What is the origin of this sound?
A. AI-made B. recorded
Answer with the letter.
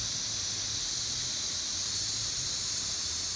B